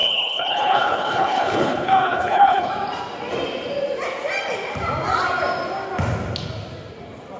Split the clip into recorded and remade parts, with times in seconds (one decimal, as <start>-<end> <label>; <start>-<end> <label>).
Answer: 0.0-2.7 remade; 2.7-7.4 recorded